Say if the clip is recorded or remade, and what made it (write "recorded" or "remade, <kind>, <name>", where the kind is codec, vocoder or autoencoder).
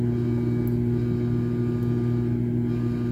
recorded